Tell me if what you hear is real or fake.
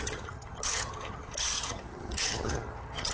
fake